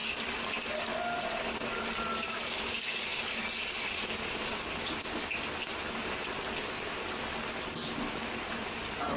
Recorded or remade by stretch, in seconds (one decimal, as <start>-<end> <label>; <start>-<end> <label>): 0.0-9.2 recorded